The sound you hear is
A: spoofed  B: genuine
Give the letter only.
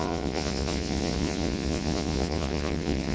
A